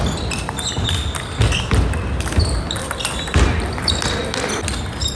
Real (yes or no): yes